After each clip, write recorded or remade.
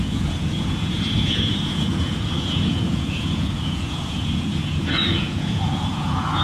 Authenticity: remade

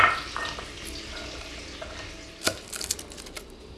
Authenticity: recorded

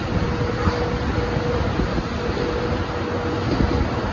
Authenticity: recorded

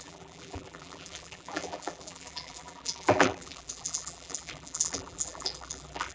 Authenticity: remade